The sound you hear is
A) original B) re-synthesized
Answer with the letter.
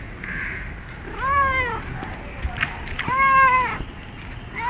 A